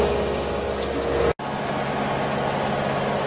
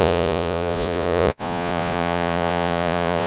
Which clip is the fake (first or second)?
second